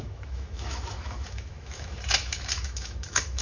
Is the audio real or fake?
fake